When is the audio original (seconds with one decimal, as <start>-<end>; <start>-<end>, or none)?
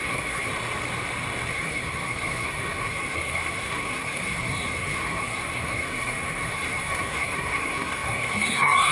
0.5-1.5